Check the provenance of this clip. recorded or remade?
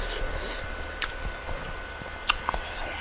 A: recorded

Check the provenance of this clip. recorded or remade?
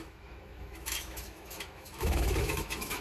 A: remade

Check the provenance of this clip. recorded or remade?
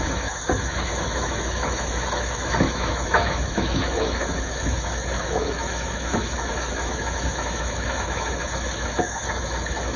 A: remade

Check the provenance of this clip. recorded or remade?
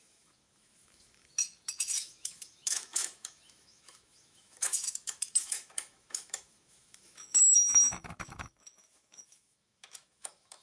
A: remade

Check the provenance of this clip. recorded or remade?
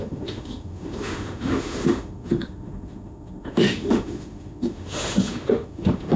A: remade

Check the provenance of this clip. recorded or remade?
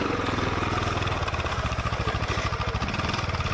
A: recorded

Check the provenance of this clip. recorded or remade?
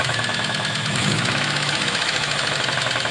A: remade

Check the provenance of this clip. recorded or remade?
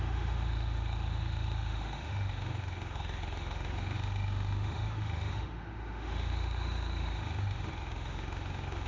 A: remade